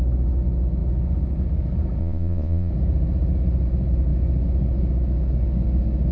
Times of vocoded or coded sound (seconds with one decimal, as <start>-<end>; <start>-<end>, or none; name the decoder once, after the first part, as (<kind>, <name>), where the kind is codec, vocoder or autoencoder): 2.0-2.7 (vocoder, Vocos)